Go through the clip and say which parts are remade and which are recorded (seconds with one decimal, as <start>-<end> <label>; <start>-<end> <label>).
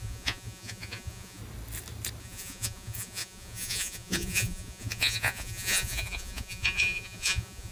0.0-1.4 remade; 1.4-2.2 recorded; 2.2-7.7 remade